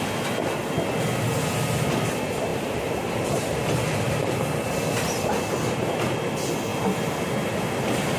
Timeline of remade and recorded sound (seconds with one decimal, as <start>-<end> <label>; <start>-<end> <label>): 0.0-2.5 recorded; 2.5-4.4 remade; 4.4-8.2 recorded